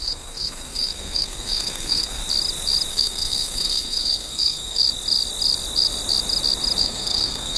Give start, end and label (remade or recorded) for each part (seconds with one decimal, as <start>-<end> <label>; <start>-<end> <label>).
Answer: 0.0-2.2 remade; 2.2-2.9 recorded; 2.9-4.8 remade; 4.8-6.8 recorded; 6.8-7.6 remade